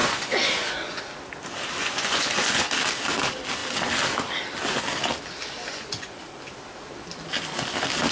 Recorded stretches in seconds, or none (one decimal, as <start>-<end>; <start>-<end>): 1.0-1.8; 2.7-5.7; 6.2-8.1